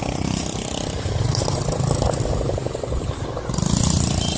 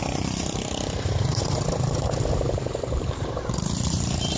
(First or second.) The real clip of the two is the first